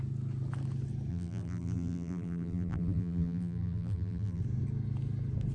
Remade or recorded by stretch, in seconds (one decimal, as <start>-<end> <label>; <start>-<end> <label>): 0.0-1.1 recorded; 1.1-4.4 remade; 4.4-5.5 recorded